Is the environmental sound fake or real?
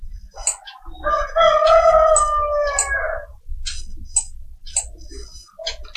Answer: real